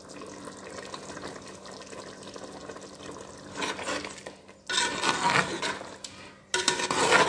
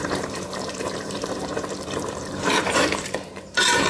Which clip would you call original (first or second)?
first